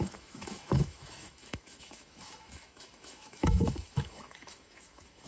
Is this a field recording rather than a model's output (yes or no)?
no